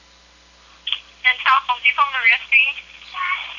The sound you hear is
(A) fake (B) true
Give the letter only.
B